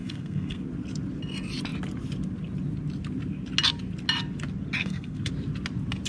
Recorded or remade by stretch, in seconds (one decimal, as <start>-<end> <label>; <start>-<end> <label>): 0.0-0.6 remade; 0.6-4.8 recorded; 4.8-5.3 remade; 5.3-6.1 recorded